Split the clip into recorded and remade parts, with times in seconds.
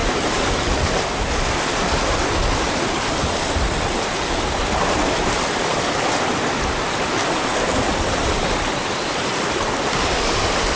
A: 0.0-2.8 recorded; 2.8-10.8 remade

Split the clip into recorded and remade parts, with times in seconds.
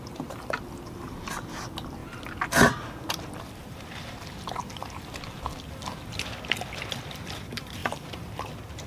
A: 0.0-2.0 remade; 2.0-6.9 recorded; 6.9-8.9 remade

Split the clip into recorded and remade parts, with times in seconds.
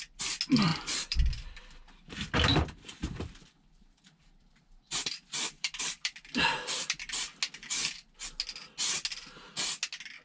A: 0.0-0.7 recorded; 0.7-1.6 remade; 1.6-2.5 recorded; 2.5-7.2 remade; 7.2-10.2 recorded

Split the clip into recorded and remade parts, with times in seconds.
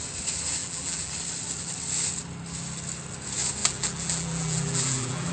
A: 0.0-0.6 recorded; 0.6-1.1 remade; 1.1-3.6 recorded; 3.6-5.3 remade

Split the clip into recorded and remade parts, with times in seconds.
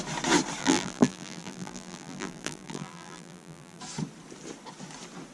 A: 0.0-0.6 recorded; 0.6-3.8 remade; 3.8-5.3 recorded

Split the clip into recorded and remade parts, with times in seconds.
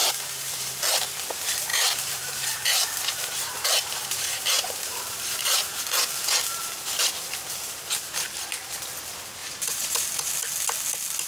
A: 0.0-0.6 remade; 0.6-1.7 recorded; 1.7-5.8 remade; 5.8-9.4 recorded; 9.4-10.3 remade; 10.3-11.3 recorded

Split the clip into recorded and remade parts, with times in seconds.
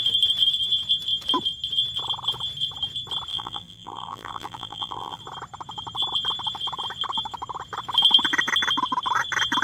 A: 0.0-3.3 recorded; 3.3-5.2 remade; 5.2-9.6 recorded